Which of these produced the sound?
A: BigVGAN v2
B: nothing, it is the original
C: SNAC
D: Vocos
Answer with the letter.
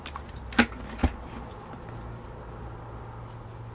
B